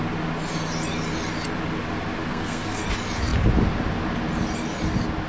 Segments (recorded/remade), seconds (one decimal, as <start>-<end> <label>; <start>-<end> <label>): 0.0-2.3 recorded; 2.3-2.8 remade; 2.8-5.3 recorded